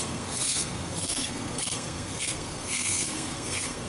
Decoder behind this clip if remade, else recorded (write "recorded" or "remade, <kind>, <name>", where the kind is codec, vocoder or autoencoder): remade, codec, SNAC